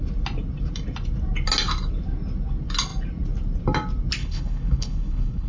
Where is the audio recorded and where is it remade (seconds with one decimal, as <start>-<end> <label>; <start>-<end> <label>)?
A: 0.0-4.2 recorded; 4.2-5.5 remade